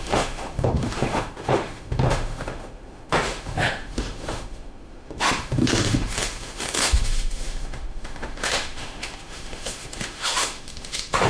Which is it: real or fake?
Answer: fake